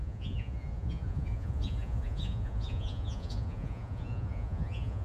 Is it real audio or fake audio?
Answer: fake